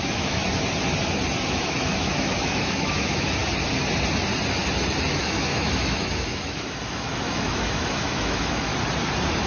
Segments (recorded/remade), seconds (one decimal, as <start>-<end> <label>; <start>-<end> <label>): 0.0-0.4 remade; 0.4-1.5 recorded; 1.5-3.4 remade; 3.4-5.1 recorded; 5.1-8.7 remade; 8.7-9.5 recorded